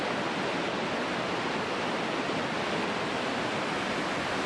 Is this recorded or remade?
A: recorded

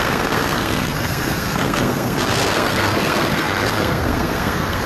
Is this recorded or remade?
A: remade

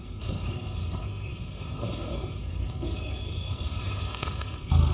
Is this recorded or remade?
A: remade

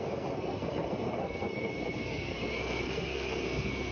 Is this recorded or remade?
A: remade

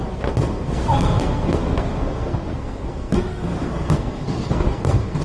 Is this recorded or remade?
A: remade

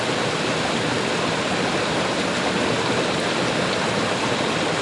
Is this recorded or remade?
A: recorded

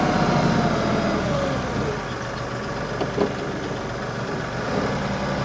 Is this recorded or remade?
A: recorded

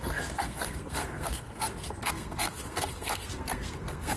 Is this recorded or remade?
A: remade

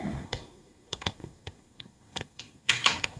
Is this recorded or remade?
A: remade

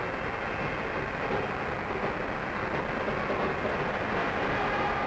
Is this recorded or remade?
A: recorded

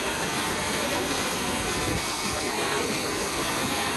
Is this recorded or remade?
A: remade